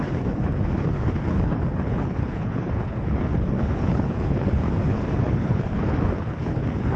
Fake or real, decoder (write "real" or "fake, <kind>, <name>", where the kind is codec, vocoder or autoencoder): fake, codec, HILCodec